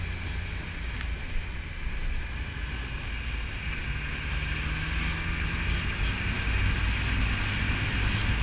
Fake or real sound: real